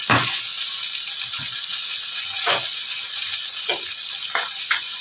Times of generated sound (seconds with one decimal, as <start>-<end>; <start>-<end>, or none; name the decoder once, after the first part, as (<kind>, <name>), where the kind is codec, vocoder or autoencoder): 0.0-0.5 (vocoder, Vocos); 1.4-3.7; 4.5-5.0